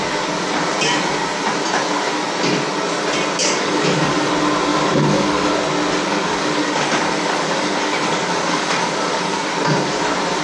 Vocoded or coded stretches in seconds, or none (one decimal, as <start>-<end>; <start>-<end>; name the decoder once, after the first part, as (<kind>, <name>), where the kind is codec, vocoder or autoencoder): 3.4-4.3 (codec, DAC); 4.7-5.5; 6.1-9.5